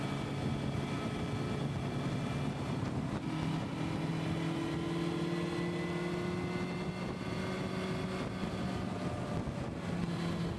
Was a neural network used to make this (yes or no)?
no